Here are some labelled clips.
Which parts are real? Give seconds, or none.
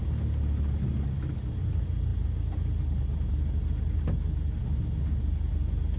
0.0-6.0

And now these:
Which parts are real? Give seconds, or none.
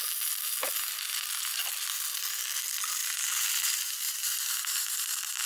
0.0-3.0; 5.0-5.5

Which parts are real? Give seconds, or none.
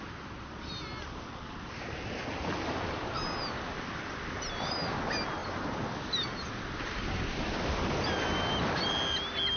0.0-9.6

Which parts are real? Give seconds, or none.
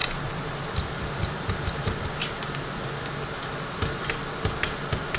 0.0-5.2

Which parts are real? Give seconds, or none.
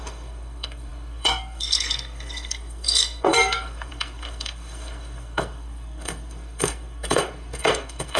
none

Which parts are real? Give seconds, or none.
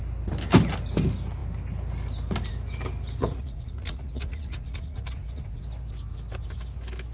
0.0-3.2; 5.6-7.1